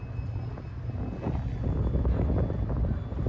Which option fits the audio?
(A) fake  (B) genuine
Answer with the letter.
B